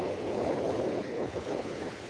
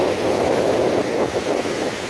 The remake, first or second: first